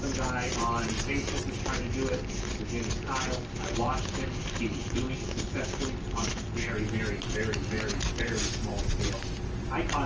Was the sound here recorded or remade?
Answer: recorded